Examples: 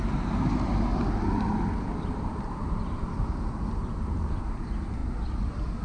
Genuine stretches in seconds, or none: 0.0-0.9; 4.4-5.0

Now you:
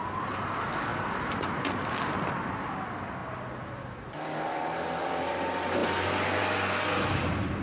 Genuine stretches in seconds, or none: 0.0-7.6